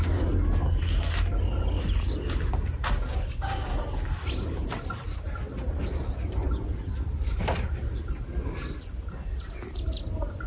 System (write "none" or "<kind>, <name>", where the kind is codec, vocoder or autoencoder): none